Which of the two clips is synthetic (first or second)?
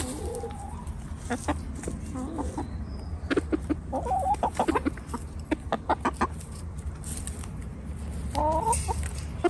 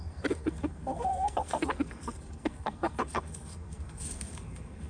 second